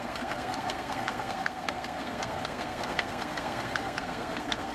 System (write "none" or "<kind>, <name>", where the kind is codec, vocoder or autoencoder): codec, SNAC